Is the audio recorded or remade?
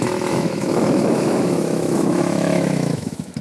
remade